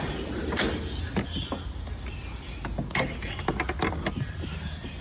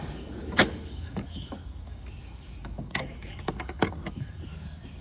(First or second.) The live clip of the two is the first